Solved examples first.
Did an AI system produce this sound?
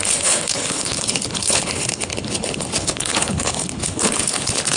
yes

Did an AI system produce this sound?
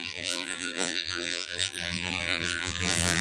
yes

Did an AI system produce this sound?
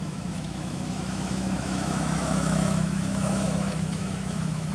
yes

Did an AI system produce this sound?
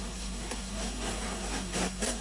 yes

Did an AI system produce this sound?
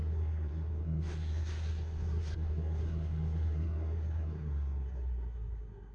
yes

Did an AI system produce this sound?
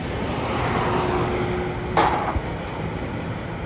no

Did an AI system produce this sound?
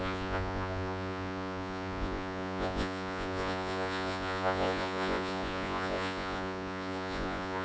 yes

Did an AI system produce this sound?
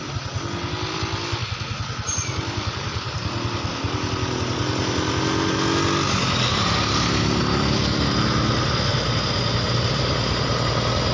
no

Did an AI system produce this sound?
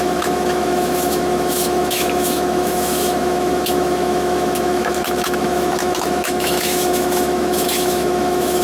yes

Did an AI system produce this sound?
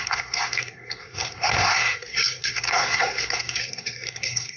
yes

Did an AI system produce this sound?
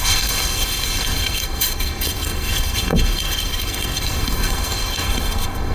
yes